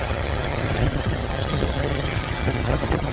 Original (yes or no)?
no